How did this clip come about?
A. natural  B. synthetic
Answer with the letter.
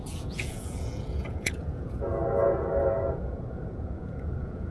B